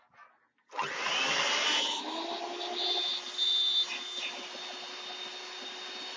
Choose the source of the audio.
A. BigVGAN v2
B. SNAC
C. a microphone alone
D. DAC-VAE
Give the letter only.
C